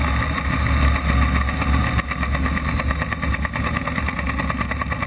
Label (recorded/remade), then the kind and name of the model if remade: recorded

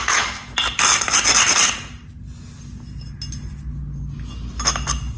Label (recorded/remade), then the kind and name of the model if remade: recorded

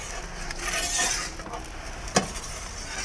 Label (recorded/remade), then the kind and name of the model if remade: recorded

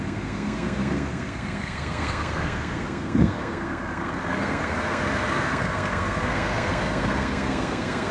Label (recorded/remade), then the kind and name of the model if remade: remade, codec, SNAC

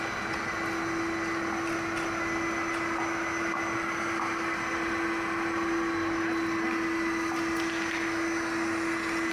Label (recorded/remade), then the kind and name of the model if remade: recorded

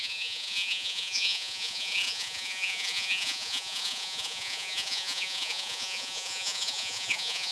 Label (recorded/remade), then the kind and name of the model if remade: remade, vocoder, Vocos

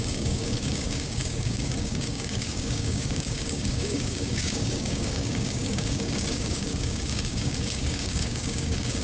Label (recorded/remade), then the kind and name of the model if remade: remade, codec, DAC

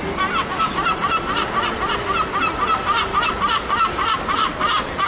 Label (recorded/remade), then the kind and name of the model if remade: recorded